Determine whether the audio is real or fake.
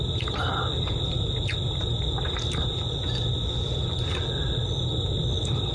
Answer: real